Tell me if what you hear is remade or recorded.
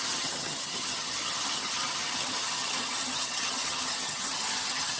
remade